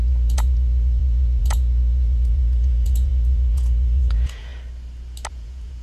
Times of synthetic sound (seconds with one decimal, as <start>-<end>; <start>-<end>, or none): 0.0-4.5; 5.3-5.8